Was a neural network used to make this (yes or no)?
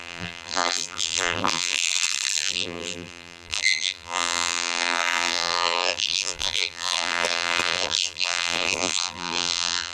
yes